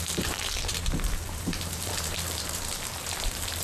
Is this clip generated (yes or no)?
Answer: yes